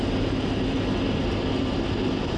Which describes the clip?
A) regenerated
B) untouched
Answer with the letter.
B